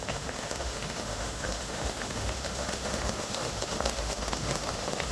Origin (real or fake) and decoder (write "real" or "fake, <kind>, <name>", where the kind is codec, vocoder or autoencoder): fake, autoencoder, DAC-VAE